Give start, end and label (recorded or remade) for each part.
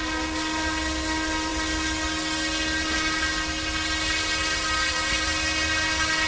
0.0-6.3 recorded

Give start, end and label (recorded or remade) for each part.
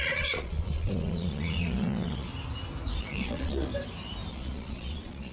0.0-2.3 remade; 2.3-3.0 recorded; 3.0-3.7 remade; 3.7-4.3 recorded; 4.3-5.3 remade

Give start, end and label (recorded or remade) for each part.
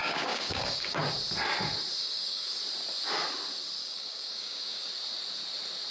0.0-1.0 remade; 1.0-2.0 recorded; 2.0-2.6 remade; 2.6-3.8 recorded; 3.8-4.9 remade; 4.9-5.9 recorded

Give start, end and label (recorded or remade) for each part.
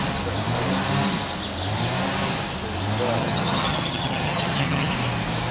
0.0-3.2 recorded; 3.2-4.9 remade; 4.9-5.5 recorded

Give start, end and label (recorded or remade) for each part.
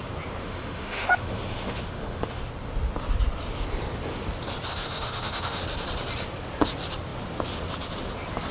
0.0-0.4 recorded; 0.4-2.4 remade; 2.4-4.7 recorded; 4.7-5.6 remade; 5.6-8.5 recorded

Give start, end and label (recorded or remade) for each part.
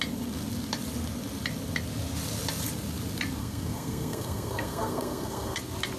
0.0-3.4 recorded; 3.4-5.6 remade; 5.6-6.0 recorded